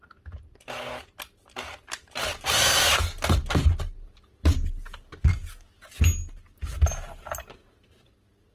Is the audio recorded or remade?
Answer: recorded